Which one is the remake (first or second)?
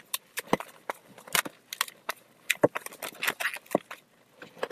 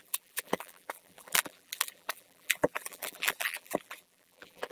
second